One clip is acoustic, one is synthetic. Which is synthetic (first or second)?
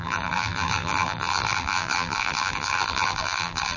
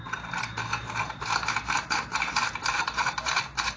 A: first